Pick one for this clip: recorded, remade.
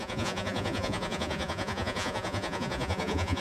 remade